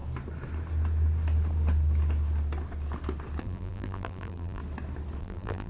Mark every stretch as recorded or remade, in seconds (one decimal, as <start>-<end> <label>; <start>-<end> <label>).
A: 0.0-3.4 recorded; 3.4-4.6 remade; 4.6-5.2 recorded; 5.2-5.7 remade